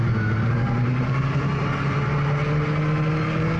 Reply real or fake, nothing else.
real